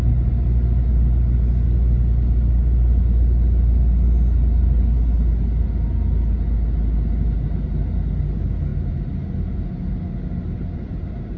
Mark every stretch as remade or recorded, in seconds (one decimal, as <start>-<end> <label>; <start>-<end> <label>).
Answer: 0.0-11.4 recorded